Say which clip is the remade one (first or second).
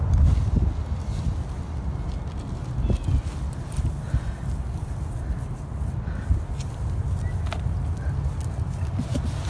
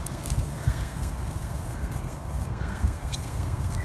second